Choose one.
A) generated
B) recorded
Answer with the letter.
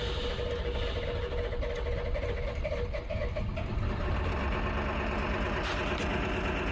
B